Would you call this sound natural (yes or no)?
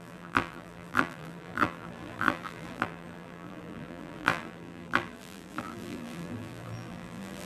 no